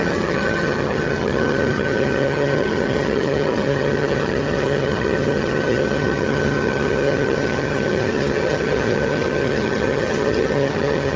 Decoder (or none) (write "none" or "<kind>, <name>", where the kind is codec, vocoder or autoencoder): vocoder, HiFi-GAN